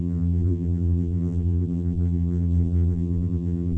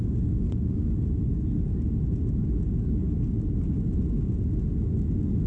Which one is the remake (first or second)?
first